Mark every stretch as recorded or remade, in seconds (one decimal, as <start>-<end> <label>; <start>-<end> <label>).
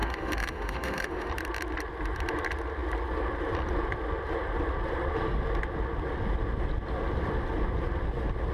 0.0-1.3 remade; 1.3-8.5 recorded